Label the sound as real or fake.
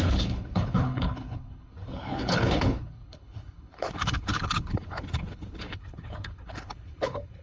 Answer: fake